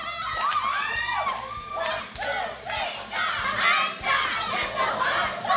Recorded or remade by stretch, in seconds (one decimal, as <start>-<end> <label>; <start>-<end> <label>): 0.0-5.6 recorded